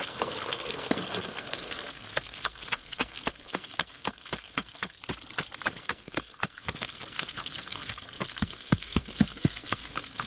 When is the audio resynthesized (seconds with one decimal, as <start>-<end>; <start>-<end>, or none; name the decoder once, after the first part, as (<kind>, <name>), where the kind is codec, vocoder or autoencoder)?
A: 0.0-5.0 (codec, SNAC); 5.8-10.3